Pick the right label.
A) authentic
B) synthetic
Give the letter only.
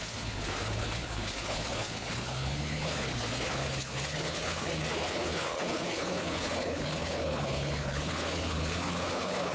B